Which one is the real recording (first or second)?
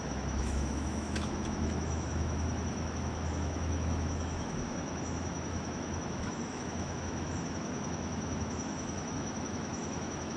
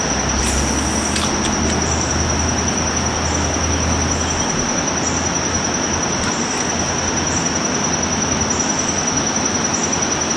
second